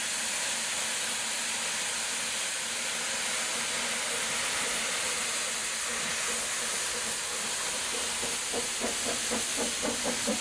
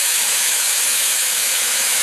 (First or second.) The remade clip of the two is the second